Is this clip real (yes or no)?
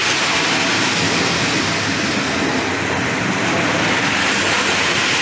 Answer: yes